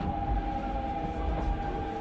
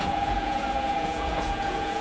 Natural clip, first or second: first